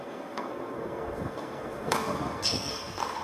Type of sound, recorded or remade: remade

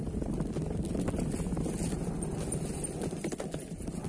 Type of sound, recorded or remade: recorded